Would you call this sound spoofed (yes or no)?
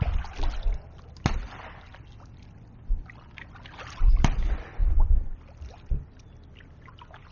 no